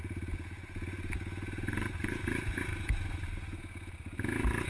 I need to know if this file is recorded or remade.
remade